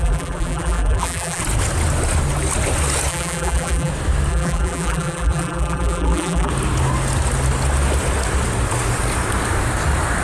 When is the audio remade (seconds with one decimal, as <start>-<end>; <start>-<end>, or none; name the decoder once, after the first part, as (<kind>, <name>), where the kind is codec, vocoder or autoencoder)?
0.0-1.4 (vocoder, BigVGAN v2); 3.1-3.9; 4.3-6.5